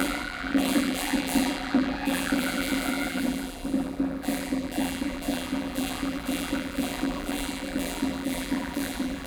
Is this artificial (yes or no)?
yes